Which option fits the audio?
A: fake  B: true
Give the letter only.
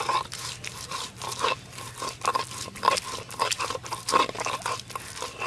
B